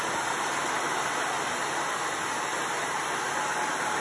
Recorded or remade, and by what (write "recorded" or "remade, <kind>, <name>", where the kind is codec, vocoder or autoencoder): recorded